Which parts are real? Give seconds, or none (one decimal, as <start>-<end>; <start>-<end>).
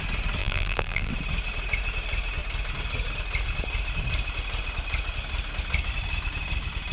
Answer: 0.0-0.4; 1.1-6.9